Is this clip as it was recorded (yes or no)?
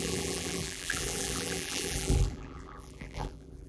no